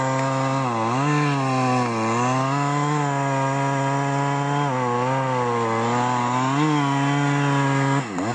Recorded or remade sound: recorded